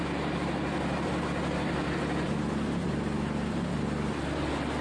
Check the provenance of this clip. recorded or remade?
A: recorded